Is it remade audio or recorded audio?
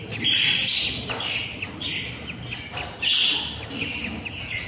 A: recorded